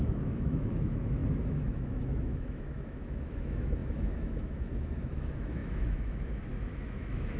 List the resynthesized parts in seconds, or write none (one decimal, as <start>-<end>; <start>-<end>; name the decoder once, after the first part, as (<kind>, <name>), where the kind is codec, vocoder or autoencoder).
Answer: 0.0-7.4 (autoencoder, DAC-VAE)